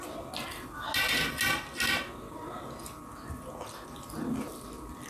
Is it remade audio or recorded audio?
recorded